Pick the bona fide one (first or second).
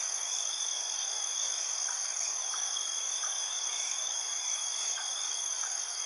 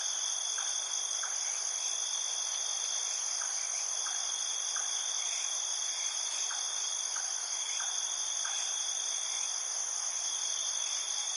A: second